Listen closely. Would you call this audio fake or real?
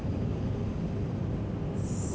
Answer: real